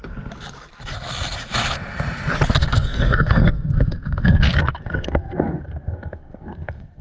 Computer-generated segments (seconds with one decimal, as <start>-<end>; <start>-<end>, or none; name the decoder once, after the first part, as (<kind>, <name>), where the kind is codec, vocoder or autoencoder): 2.6-7.0 (codec, SNAC)